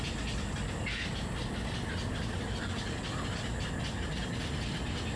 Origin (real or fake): real